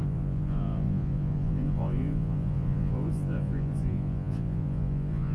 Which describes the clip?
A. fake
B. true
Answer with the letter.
A